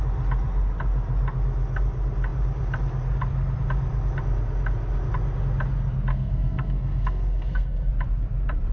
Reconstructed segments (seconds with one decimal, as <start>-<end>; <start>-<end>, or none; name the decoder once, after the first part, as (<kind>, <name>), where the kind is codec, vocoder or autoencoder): 6.1-7.9 (codec, SNAC)